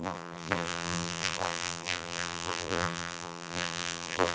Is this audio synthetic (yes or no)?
yes